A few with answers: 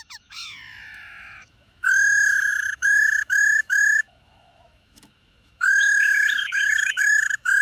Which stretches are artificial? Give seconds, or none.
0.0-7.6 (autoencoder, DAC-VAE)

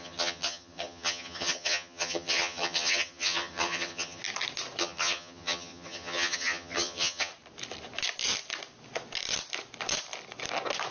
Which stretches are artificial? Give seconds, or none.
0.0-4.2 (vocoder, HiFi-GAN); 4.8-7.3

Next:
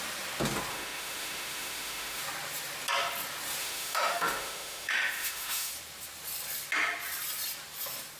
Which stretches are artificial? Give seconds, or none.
0.7-2.2 (autoencoder, DAC-VAE); 3.6-5.7

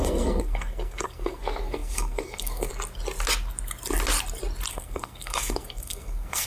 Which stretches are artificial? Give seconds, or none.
0.0-2.7 (codec, SNAC); 4.7-6.5

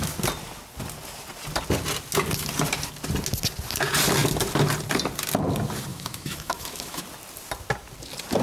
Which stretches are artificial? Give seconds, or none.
5.9-7.0 (autoencoder, DAC-VAE)

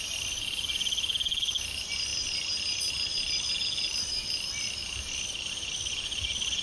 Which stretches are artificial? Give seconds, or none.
none

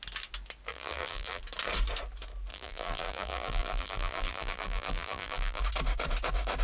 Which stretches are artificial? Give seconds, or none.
0.7-1.4 (vocoder, BigVGAN v2); 2.5-5.6

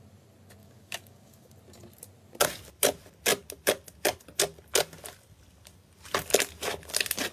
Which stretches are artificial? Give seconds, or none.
0.6-1.5 (codec, DAC)